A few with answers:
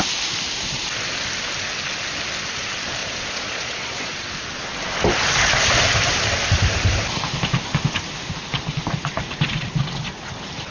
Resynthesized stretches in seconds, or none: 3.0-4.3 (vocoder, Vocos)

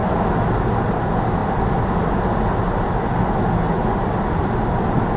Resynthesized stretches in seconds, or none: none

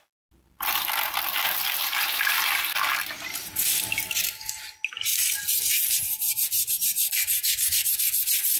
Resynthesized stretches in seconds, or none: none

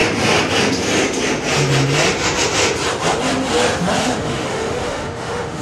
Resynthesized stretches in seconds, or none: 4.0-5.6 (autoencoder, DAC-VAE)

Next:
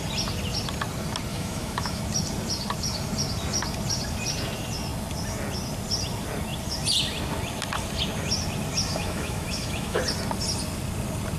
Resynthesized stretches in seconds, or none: 1.3-2.0 (autoencoder, DAC-VAE); 9.0-10.0

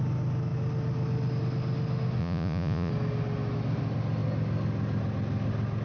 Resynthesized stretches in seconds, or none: 2.2-2.9 (vocoder, Vocos)

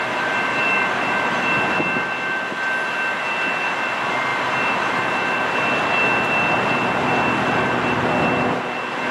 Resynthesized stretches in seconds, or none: 4.3-4.9 (vocoder, BigVGAN v2)

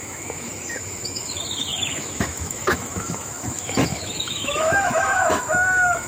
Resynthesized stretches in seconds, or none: 0.0-6.1 (autoencoder, DAC-VAE)